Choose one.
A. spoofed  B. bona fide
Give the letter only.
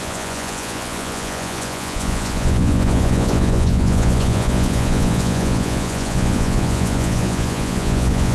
A